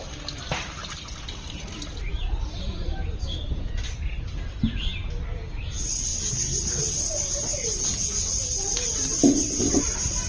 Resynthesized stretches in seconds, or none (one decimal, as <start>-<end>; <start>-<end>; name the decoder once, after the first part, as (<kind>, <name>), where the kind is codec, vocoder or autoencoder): 0.8-3.5 (vocoder, BigVGAN v2); 6.1-10.3